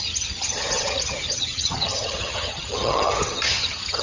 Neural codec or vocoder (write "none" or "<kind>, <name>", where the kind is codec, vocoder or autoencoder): vocoder, HiFi-GAN